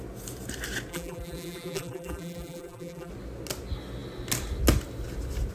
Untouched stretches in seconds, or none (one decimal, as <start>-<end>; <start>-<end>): 0.0-0.9; 3.1-5.5